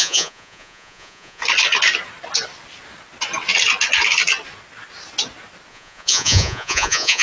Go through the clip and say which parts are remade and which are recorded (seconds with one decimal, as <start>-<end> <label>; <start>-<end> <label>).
0.0-1.4 remade; 1.4-5.7 recorded; 5.7-7.2 remade